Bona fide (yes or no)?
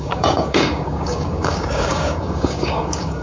no